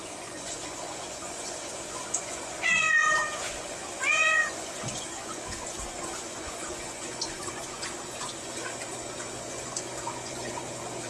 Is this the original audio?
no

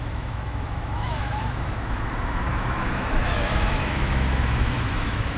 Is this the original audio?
no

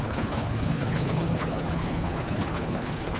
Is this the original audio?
no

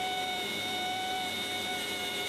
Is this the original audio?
no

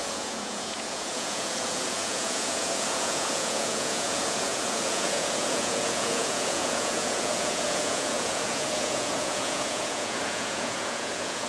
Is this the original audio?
no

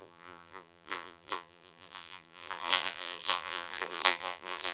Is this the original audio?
no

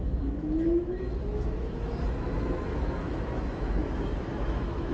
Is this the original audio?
no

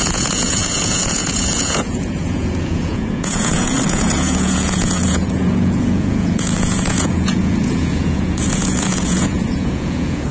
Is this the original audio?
no